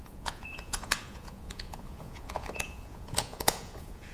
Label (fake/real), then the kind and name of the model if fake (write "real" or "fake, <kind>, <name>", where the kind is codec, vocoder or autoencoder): fake, vocoder, Vocos